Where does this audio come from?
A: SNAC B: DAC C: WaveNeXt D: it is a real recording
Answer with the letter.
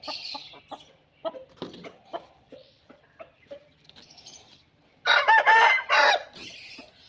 D